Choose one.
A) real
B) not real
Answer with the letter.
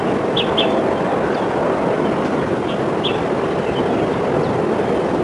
A